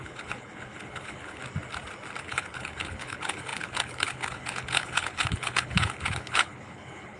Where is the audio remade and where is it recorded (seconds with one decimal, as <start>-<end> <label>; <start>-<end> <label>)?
0.0-1.4 remade; 1.4-2.2 recorded; 2.2-7.2 remade